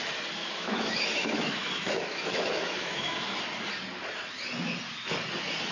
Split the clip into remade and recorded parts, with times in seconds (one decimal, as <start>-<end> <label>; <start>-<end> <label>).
0.0-0.4 recorded; 0.4-3.4 remade; 3.4-5.7 recorded